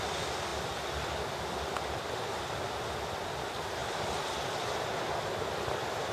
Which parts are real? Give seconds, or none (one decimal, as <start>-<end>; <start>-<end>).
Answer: 0.0-6.1

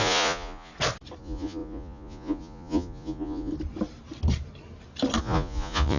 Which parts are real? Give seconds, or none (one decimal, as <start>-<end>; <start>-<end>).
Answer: 0.7-1.2; 3.5-5.2

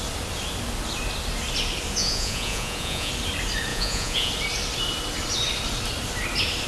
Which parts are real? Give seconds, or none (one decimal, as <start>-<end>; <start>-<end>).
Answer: 0.0-2.0; 3.1-3.7; 4.3-6.7

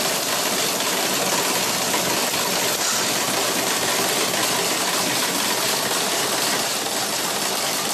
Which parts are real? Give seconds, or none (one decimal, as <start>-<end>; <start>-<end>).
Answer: 0.0-7.9

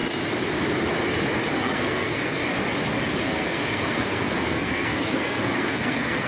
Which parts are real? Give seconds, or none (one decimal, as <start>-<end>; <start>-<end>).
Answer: 0.0-1.6; 2.4-3.2